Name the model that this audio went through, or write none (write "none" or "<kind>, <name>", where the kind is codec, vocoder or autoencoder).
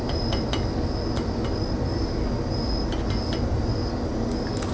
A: none